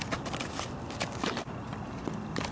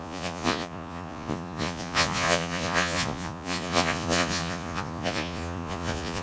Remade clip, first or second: second